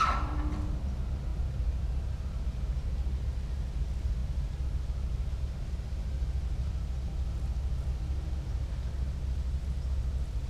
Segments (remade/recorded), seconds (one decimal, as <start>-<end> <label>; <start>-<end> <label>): 0.0-10.5 recorded